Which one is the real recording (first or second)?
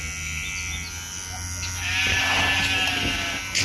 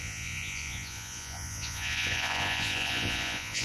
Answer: first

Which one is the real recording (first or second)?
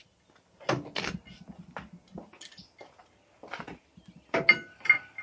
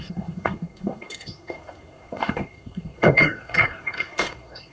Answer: first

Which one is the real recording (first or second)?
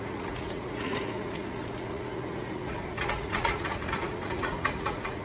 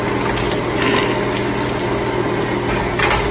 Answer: second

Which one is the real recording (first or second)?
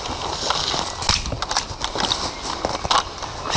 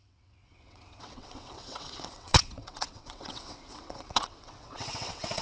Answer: first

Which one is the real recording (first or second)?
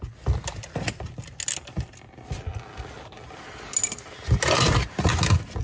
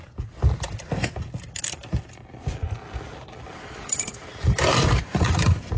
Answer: first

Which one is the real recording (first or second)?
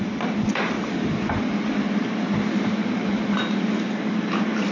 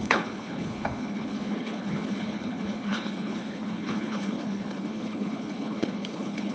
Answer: first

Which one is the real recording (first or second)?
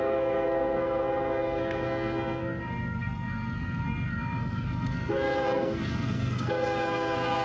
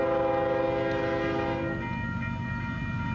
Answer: second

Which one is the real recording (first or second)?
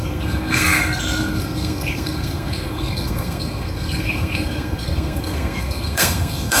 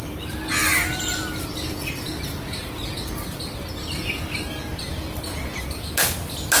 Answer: second